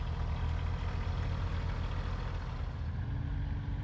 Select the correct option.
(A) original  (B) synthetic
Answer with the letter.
A